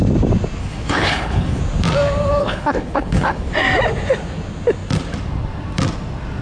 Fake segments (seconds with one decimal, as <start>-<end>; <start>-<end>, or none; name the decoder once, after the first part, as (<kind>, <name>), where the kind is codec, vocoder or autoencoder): 0.6-1.6 (codec, HILCodec); 2.4-3.5